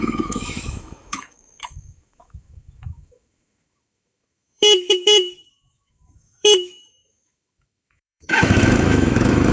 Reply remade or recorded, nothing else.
remade